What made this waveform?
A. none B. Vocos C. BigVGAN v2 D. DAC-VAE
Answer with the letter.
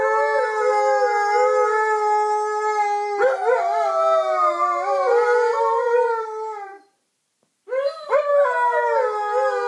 A